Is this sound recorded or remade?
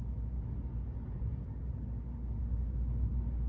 recorded